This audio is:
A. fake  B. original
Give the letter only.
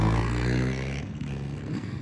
A